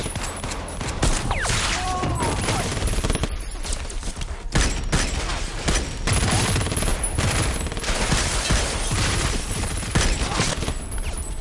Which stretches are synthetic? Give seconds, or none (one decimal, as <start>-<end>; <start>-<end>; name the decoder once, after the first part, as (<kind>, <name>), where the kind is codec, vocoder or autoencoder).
0.0-4.7 (vocoder, BigVGAN v2); 6.9-10.5